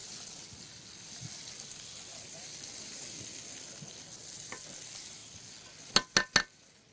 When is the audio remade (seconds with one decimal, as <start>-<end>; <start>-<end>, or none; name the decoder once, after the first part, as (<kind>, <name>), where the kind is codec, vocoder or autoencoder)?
none